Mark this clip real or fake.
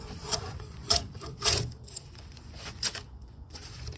fake